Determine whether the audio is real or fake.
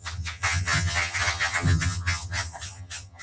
fake